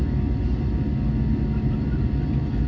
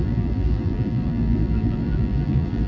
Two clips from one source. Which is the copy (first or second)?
second